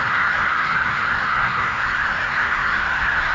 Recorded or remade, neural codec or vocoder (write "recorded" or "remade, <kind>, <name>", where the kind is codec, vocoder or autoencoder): remade, codec, SNAC